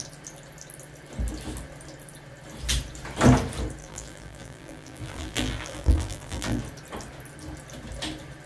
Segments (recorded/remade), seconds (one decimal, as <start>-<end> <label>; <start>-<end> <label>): 0.0-3.8 recorded; 3.8-6.6 remade; 6.6-8.5 recorded